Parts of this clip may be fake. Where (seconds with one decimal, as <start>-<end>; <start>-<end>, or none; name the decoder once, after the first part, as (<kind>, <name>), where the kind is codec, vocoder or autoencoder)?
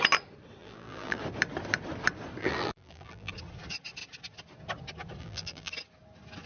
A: 0.6-1.2 (vocoder, BigVGAN v2); 2.4-3.3; 5.2-5.7